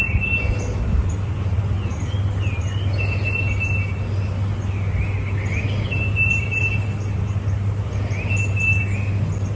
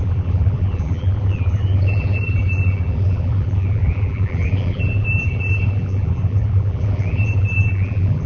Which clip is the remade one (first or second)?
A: second